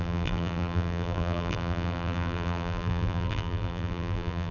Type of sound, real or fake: fake